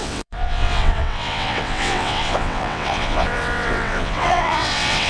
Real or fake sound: fake